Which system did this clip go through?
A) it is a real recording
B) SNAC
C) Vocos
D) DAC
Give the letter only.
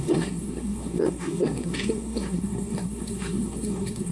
B